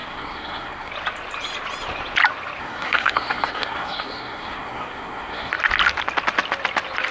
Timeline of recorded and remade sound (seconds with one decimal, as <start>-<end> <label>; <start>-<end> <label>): 0.0-0.9 remade; 0.9-2.6 recorded; 2.6-5.5 remade; 5.5-7.1 recorded